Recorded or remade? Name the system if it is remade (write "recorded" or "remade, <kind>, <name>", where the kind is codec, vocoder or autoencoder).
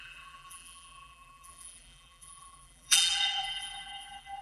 remade, vocoder, BigVGAN v2